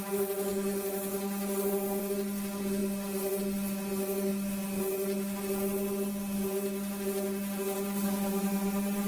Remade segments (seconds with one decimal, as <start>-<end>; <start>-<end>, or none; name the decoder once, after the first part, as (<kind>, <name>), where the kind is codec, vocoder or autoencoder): none